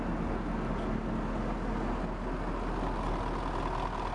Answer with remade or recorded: recorded